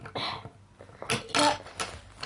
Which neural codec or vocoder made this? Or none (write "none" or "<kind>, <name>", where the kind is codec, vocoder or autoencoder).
none